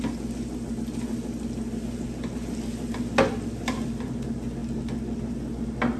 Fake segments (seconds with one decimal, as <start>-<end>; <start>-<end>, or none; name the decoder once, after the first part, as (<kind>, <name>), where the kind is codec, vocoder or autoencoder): none